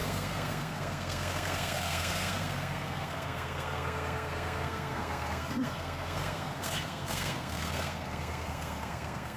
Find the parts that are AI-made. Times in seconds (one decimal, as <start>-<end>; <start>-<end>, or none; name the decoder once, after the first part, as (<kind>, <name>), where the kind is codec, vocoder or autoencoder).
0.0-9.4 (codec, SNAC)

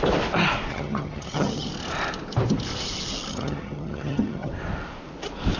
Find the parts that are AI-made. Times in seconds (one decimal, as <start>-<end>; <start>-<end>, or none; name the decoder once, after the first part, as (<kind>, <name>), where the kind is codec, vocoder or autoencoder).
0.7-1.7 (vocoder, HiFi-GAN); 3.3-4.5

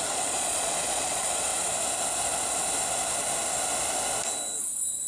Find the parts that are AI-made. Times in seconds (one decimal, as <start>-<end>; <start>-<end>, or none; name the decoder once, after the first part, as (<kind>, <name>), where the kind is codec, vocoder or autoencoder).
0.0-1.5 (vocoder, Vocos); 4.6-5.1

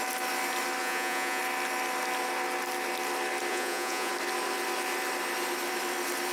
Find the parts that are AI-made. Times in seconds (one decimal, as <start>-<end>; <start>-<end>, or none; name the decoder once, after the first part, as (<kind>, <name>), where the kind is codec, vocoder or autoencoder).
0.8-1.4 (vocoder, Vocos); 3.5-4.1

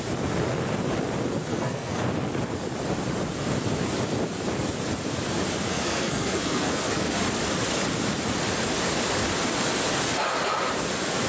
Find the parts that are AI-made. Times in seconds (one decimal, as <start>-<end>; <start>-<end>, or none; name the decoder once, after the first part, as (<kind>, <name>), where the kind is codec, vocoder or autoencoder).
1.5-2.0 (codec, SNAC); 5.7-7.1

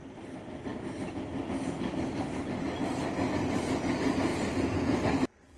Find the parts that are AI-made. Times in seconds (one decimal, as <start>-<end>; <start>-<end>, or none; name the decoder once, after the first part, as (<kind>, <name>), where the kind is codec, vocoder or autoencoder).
none